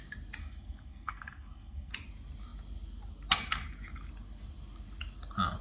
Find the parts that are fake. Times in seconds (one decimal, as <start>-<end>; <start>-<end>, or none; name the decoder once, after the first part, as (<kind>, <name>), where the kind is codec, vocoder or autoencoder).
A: 0.4-1.9 (codec, SNAC)